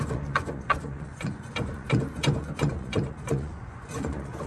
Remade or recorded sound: remade